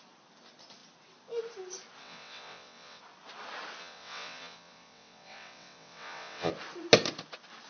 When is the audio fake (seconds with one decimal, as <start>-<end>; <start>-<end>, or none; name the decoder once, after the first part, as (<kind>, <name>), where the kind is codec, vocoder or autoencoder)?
2.0-3.0 (vocoder, WaveNeXt); 3.8-6.5